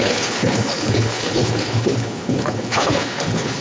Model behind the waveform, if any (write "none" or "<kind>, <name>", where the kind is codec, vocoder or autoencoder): codec, HILCodec